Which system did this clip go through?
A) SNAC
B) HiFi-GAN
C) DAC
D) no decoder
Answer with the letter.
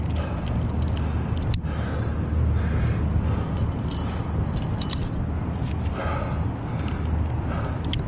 D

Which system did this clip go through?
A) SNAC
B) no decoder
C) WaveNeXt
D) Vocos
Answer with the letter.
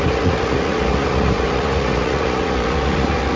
D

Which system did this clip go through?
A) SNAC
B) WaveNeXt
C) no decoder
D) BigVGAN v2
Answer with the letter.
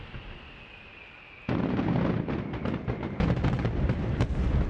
C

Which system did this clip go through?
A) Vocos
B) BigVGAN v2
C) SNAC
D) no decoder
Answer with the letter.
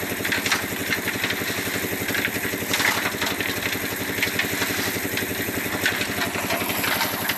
D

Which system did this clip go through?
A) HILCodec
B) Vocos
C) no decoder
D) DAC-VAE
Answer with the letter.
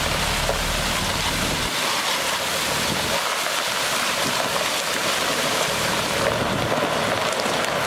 C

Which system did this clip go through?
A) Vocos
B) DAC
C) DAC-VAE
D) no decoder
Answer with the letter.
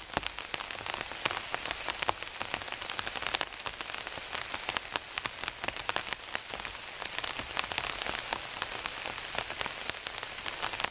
D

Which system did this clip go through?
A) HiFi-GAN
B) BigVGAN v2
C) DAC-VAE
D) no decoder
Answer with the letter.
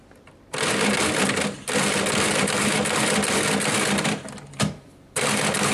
B